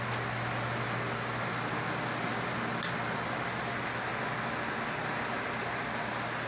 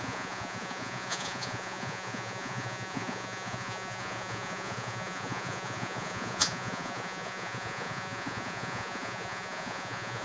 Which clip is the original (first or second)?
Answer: first